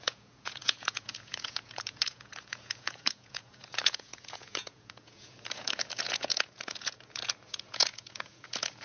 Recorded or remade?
remade